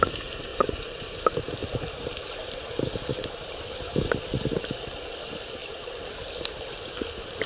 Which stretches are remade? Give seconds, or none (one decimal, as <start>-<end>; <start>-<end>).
0.5-1.2